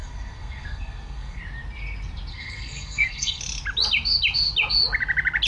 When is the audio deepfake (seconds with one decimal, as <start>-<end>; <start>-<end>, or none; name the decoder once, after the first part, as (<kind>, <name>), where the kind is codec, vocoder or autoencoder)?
0.0-1.4 (codec, SNAC); 2.3-3.4